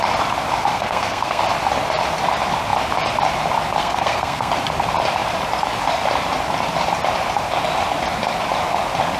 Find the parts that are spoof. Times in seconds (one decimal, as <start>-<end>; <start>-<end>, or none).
0.7-1.4; 3.8-4.5